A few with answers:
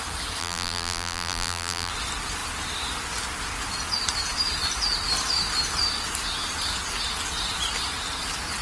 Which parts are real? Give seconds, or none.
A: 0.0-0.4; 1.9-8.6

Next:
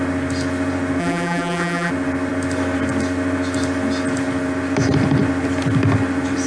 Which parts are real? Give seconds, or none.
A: 0.0-1.0; 1.9-6.5

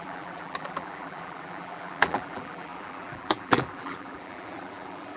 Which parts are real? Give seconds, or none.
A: none

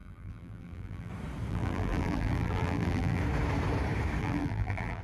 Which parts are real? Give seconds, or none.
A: 1.1-1.5; 3.2-4.2

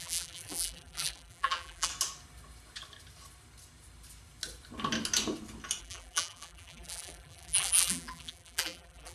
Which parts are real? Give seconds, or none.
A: 1.9-5.8

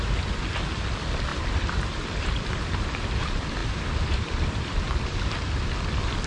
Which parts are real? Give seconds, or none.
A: 0.0-1.3; 2.8-3.6; 5.7-6.3

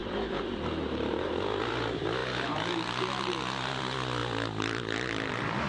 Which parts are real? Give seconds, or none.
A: 1.3-5.7